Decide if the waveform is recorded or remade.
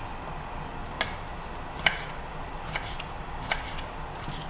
recorded